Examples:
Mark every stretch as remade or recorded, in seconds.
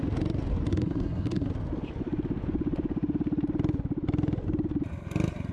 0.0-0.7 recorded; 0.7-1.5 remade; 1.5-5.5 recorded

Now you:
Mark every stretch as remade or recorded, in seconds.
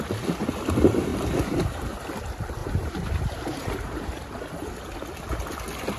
0.0-2.6 recorded; 2.6-4.4 remade; 4.4-6.0 recorded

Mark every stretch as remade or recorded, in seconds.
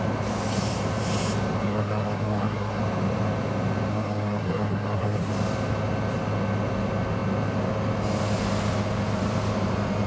0.0-1.6 recorded; 1.6-2.8 remade; 2.8-3.9 recorded; 3.9-5.3 remade; 5.3-10.1 recorded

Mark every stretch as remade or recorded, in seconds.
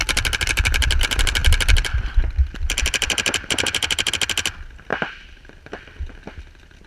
0.0-1.4 recorded; 1.4-4.1 remade; 4.1-4.9 recorded; 4.9-5.6 remade; 5.6-6.9 recorded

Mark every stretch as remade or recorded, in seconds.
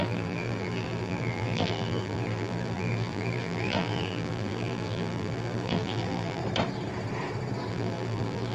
0.0-6.4 remade; 6.4-7.7 recorded; 7.7-8.5 remade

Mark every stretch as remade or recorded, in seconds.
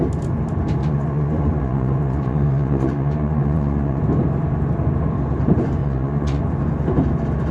0.0-0.8 recorded; 0.8-4.0 remade; 4.0-5.8 recorded; 5.8-6.4 remade; 6.4-7.5 recorded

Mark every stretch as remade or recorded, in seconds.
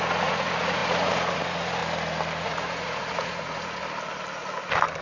0.0-1.8 remade; 1.8-2.4 recorded; 2.4-3.8 remade; 3.8-5.0 recorded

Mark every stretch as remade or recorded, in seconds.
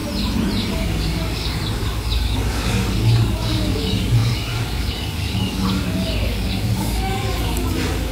0.0-0.7 recorded; 0.7-8.1 remade